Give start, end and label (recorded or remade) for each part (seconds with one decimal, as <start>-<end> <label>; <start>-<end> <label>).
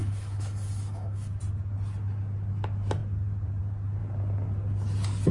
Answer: 0.0-1.4 remade; 1.4-5.3 recorded